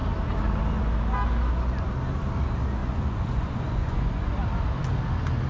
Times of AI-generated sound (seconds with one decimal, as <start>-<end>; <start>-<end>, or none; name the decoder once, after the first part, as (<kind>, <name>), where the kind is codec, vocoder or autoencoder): 2.8-4.3 (vocoder, Vocos)